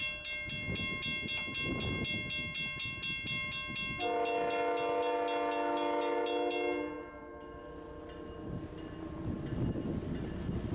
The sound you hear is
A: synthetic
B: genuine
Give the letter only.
B